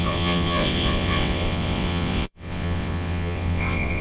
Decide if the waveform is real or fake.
fake